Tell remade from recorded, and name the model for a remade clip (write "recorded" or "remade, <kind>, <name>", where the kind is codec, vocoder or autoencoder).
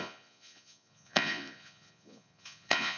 remade, vocoder, Vocos